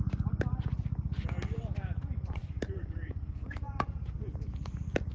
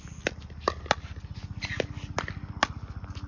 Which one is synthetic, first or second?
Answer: first